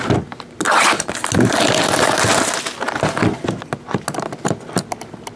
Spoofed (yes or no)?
no